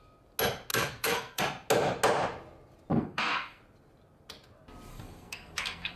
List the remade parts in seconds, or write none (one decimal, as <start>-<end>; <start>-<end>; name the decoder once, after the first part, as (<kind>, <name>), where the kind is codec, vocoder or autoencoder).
0.7-1.4 (codec, SNAC); 2.9-3.6; 4.9-6.0